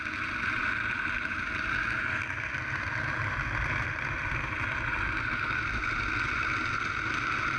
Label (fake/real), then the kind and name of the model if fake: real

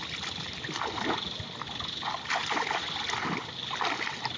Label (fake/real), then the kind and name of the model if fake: real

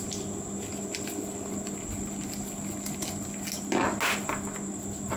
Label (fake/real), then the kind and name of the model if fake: real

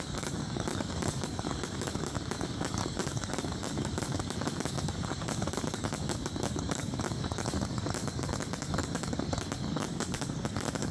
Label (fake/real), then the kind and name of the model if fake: fake, codec, DAC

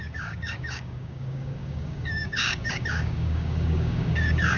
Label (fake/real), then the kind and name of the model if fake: fake, codec, DAC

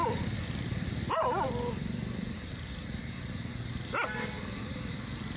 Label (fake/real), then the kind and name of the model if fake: real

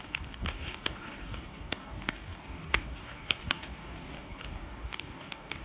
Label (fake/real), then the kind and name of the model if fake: fake, codec, DAC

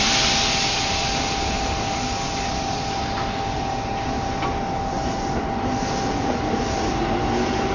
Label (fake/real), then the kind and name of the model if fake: real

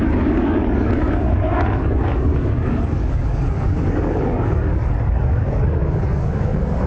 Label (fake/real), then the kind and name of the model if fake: fake, codec, DAC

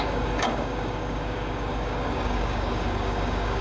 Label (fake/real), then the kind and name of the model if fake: fake, codec, DAC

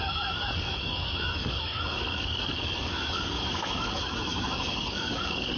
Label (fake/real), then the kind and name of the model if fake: fake, codec, DAC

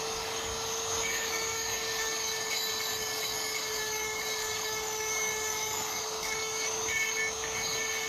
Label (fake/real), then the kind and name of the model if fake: fake, codec, DAC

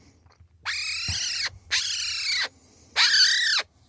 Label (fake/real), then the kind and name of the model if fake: real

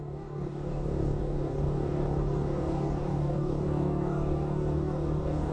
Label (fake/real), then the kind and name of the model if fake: fake, codec, DAC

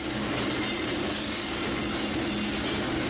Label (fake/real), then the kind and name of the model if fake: real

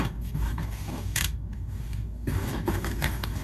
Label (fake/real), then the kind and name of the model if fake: fake, codec, DAC